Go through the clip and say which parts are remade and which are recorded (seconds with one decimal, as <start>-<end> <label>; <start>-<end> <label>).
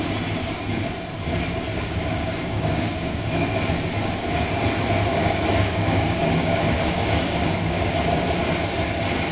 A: 0.0-1.7 recorded; 1.7-3.2 remade; 3.2-5.1 recorded; 5.1-7.9 remade; 7.9-9.3 recorded